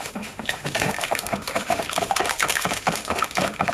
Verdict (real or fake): fake